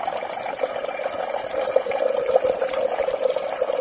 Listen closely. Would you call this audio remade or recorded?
recorded